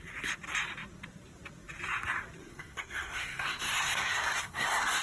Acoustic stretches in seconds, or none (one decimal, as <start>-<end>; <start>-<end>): 0.0-2.4